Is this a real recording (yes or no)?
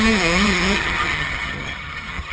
no